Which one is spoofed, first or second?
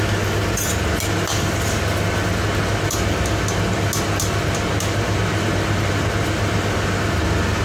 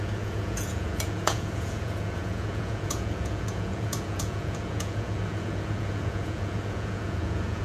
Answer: second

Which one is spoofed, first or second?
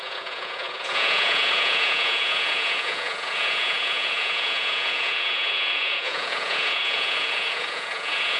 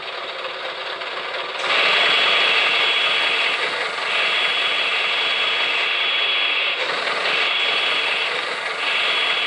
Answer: first